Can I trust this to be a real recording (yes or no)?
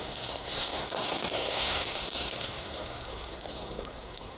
no